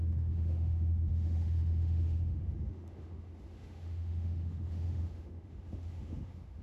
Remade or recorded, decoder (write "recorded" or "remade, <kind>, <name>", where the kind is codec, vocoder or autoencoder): remade, autoencoder, DAC-VAE